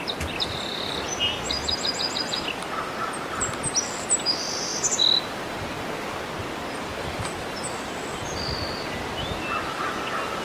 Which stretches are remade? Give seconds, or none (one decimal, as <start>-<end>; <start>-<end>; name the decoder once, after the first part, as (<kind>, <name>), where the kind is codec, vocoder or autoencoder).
none